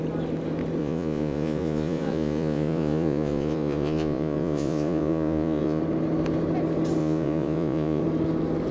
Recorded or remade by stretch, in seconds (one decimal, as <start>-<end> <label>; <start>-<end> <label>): 0.0-0.8 recorded; 0.8-5.8 remade; 5.8-7.0 recorded; 7.0-8.0 remade; 8.0-8.7 recorded